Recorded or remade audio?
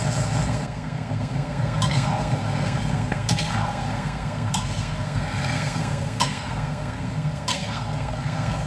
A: remade